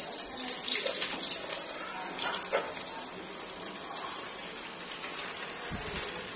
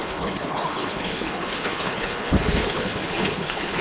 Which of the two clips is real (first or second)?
first